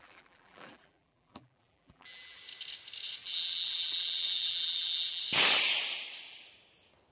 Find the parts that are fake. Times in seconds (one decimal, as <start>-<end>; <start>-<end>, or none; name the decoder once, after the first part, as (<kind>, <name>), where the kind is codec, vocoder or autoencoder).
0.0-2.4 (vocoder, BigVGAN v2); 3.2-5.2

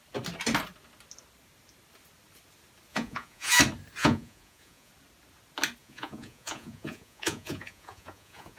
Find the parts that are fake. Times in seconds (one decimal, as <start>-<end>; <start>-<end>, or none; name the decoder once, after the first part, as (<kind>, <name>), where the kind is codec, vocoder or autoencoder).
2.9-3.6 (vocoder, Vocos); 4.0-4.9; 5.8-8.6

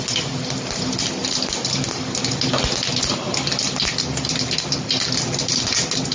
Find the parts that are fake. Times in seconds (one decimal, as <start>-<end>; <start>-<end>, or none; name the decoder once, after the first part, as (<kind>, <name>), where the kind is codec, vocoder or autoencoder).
none

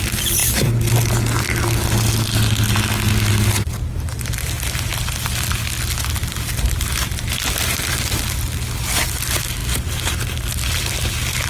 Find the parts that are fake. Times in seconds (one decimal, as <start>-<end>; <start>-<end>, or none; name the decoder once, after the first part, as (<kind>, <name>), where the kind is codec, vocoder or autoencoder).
6.2-7.6 (vocoder, BigVGAN v2)

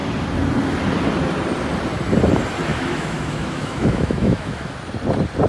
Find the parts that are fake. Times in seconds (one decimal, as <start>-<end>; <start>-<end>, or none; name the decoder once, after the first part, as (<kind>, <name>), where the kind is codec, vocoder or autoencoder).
2.7-4.7 (autoencoder, DAC-VAE)

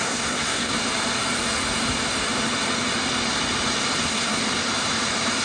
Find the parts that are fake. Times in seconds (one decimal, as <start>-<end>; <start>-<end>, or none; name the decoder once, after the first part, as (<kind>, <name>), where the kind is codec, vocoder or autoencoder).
0.0-0.8 (codec, SNAC); 4.0-4.4